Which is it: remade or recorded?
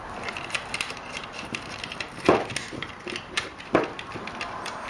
recorded